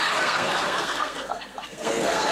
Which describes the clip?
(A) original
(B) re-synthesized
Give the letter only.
B